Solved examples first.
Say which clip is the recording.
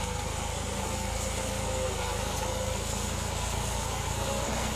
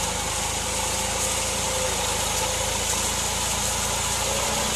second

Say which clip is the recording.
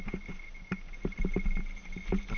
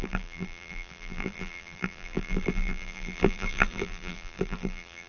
first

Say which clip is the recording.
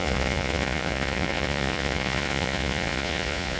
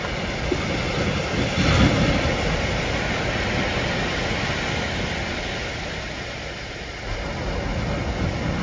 second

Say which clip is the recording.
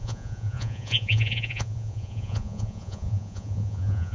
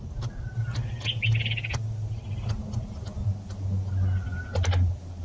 second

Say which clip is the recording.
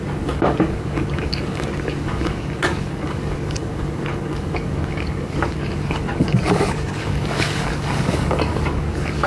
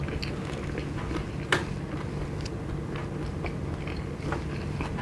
second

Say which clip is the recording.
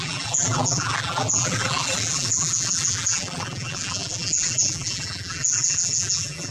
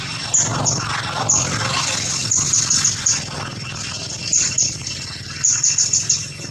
second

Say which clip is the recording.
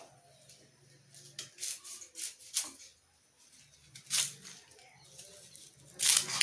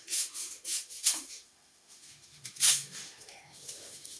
first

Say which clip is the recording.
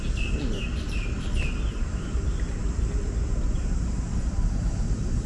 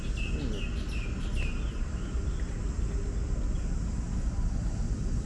second